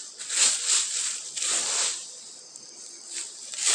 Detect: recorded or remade remade